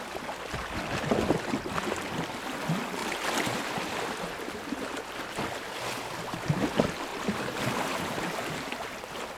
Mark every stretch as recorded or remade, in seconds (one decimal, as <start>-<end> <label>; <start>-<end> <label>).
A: 0.0-7.1 recorded; 7.1-9.0 remade; 9.0-9.4 recorded